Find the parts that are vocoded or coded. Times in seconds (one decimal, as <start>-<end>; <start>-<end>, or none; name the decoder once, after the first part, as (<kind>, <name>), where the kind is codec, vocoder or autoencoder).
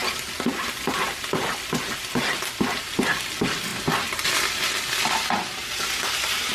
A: none